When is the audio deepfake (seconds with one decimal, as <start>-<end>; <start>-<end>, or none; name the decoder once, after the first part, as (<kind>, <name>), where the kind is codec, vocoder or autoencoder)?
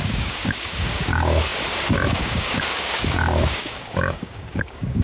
0.0-5.0 (codec, DAC)